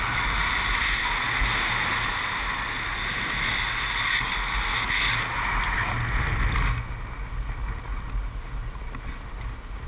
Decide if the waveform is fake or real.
real